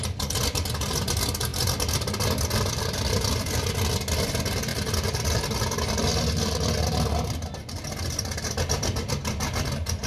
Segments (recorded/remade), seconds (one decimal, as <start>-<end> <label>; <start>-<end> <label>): 0.0-1.5 recorded; 1.5-3.4 remade; 3.4-4.7 recorded; 4.7-5.4 remade; 5.4-10.1 recorded